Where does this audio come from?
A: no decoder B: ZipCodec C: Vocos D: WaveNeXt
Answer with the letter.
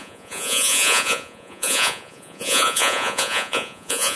C